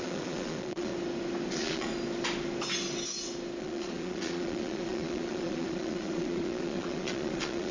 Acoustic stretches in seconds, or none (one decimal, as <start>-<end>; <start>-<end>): 0.9-1.5; 1.9-3.6